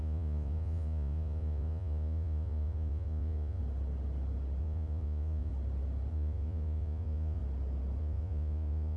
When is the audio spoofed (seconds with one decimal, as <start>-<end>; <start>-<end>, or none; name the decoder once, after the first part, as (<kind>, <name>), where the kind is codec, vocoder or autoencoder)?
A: 0.0-3.6 (vocoder, Vocos); 4.6-5.5; 6.1-7.4; 8.0-9.0